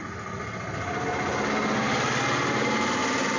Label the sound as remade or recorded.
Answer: recorded